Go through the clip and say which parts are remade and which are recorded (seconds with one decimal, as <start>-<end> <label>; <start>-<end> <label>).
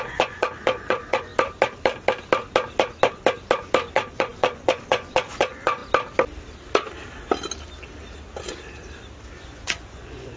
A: 0.0-1.3 remade; 1.3-3.9 recorded; 3.9-5.8 remade; 5.8-9.4 recorded; 9.4-10.4 remade